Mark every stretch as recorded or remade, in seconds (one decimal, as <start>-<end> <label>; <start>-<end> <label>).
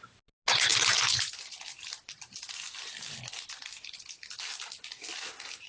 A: 0.0-5.7 recorded